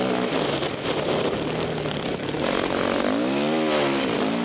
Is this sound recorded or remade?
recorded